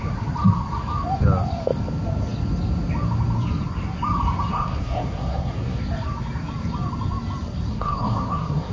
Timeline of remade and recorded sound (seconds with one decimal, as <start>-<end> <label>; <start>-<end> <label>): 0.0-4.5 recorded; 4.5-5.8 remade; 5.8-7.7 recorded; 7.7-8.7 remade